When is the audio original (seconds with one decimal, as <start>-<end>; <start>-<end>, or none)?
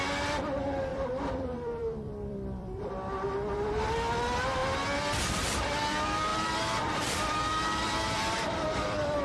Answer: 0.0-0.9; 2.9-6.3